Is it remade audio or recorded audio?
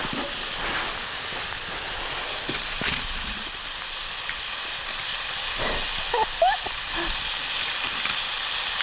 recorded